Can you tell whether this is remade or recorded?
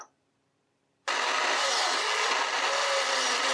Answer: recorded